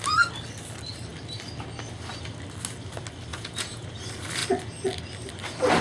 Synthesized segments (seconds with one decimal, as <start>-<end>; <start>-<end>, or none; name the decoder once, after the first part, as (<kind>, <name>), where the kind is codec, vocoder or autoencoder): 3.3-3.9 (vocoder, Vocos)